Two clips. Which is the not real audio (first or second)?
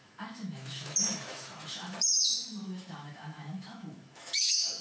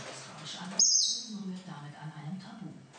first